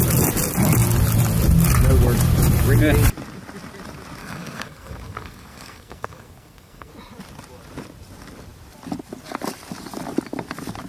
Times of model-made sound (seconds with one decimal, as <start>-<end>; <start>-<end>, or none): 4.2-6.9